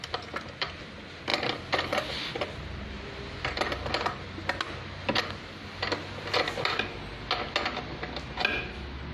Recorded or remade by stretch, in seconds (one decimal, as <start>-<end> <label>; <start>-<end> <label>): 0.0-9.1 recorded